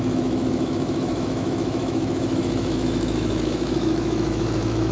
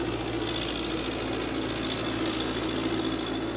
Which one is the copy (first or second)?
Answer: first